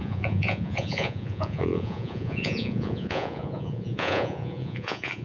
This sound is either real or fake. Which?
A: fake